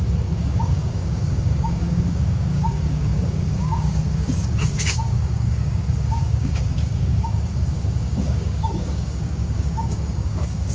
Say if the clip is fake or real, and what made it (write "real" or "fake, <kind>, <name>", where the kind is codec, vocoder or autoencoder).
fake, codec, DAC